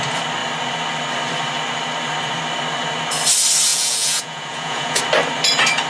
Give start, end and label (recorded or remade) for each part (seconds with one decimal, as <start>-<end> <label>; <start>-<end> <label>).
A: 0.0-3.7 recorded; 3.7-5.0 remade; 5.0-5.9 recorded